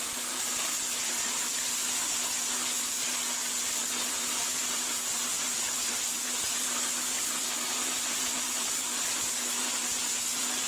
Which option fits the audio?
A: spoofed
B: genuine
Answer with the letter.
A